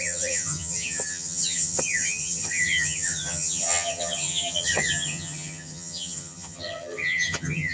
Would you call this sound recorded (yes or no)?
no